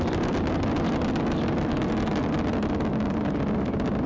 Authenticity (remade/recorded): recorded